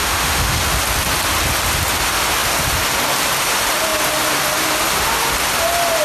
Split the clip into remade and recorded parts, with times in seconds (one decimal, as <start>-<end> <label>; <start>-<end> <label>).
0.0-0.6 remade; 0.6-6.0 recorded